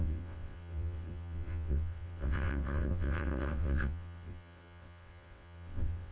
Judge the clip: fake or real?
fake